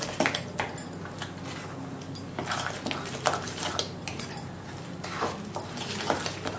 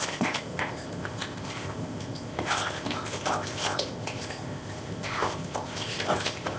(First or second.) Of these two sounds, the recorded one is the first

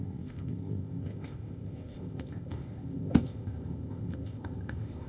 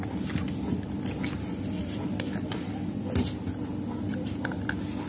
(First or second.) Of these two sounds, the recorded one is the second